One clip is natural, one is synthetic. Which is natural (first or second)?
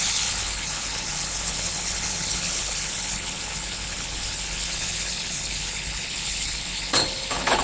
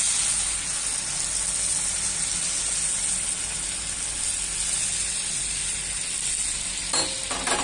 second